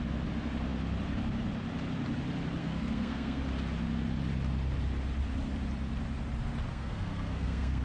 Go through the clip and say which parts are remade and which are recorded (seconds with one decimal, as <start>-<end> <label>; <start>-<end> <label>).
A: 0.0-2.6 recorded; 2.6-3.4 remade; 3.4-6.7 recorded; 6.7-7.8 remade